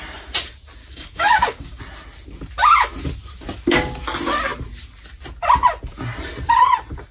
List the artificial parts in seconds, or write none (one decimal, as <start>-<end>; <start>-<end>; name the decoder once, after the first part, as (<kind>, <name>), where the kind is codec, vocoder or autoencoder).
0.8-1.8 (codec, DAC)